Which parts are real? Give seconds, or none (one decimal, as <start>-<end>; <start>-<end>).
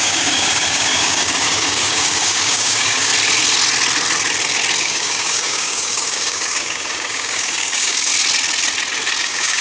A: 3.1-4.8; 8.1-9.2